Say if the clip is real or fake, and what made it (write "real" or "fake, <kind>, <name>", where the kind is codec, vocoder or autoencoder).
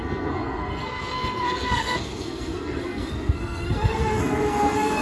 fake, codec, SNAC